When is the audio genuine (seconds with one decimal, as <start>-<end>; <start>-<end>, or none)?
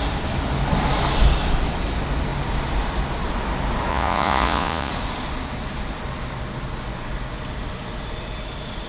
0.0-3.9; 4.9-8.9